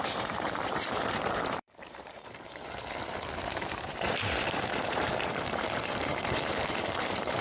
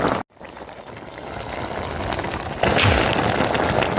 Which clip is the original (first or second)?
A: second